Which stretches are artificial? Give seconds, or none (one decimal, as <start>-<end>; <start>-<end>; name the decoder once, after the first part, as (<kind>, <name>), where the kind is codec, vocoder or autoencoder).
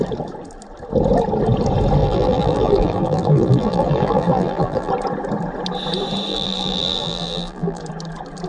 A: 2.0-4.9 (vocoder, BigVGAN v2); 6.3-7.8